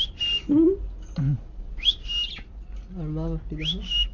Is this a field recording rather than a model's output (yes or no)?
yes